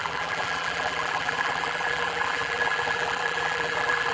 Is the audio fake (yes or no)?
yes